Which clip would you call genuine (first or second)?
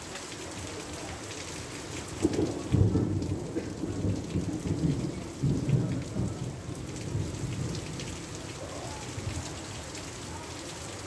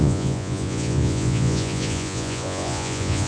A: first